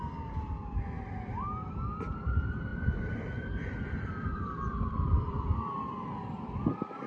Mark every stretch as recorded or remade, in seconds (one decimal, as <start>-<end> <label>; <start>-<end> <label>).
0.0-2.7 recorded; 2.7-7.1 remade